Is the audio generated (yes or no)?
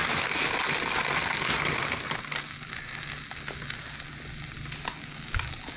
no